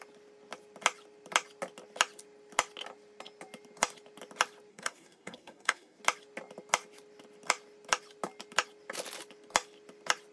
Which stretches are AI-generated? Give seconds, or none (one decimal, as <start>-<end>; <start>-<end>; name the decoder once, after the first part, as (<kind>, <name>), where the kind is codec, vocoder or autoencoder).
4.7-6.0 (codec, SNAC)